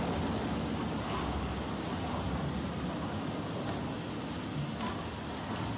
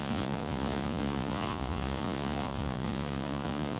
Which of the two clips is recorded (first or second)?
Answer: first